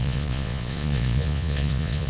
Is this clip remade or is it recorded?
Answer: remade